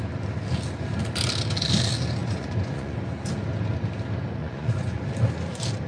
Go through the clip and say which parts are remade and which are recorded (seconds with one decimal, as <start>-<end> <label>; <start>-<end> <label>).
0.0-2.2 recorded; 2.2-3.0 remade; 3.0-4.4 recorded; 4.4-5.0 remade; 5.0-5.9 recorded